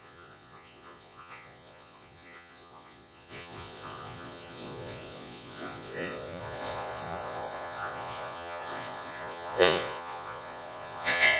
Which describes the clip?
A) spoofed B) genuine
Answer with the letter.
A